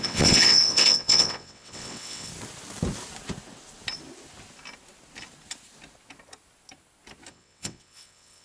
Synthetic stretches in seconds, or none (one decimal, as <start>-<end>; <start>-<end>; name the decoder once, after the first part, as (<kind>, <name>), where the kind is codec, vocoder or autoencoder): 0.0-2.3 (vocoder, WaveNeXt); 7.3-8.4